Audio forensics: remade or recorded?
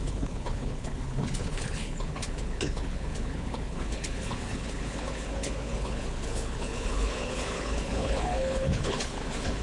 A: remade